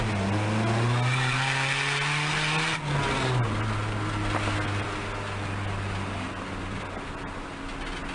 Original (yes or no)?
yes